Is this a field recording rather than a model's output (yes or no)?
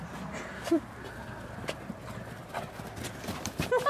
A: yes